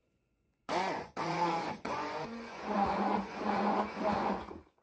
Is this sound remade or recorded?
remade